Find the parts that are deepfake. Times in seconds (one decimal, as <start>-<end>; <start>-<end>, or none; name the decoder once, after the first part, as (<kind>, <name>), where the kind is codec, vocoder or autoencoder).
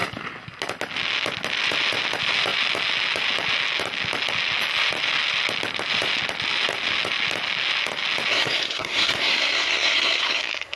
8.3-10.8 (codec, SNAC)